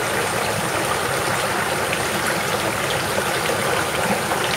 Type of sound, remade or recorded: recorded